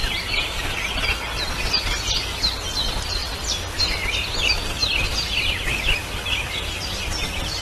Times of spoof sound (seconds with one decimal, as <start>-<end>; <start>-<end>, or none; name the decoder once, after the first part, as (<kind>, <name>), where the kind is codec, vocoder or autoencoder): 3.2-3.8 (vocoder, BigVGAN v2)